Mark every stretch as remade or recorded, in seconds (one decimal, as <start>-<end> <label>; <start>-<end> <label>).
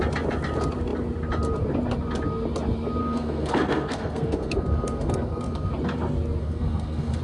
0.0-3.0 recorded; 3.0-5.7 remade; 5.7-6.4 recorded; 6.4-7.2 remade